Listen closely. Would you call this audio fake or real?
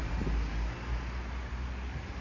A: real